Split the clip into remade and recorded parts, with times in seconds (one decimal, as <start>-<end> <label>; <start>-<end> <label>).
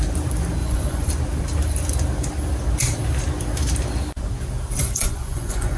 0.0-0.6 recorded; 0.6-1.1 remade; 1.1-4.8 recorded; 4.8-5.8 remade